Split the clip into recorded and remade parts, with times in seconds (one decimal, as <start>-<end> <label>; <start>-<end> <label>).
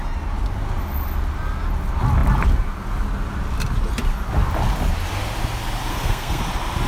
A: 0.0-5.9 recorded; 5.9-6.4 remade; 6.4-6.9 recorded